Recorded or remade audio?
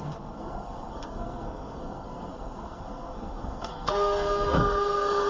remade